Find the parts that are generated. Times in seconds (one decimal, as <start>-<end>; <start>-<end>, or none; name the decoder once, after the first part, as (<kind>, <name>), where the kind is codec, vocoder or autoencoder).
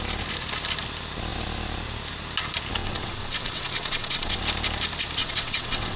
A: 2.8-4.4 (vocoder, WaveNeXt); 5.2-6.0